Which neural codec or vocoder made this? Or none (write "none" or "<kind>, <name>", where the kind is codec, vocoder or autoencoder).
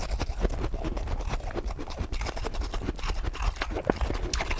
none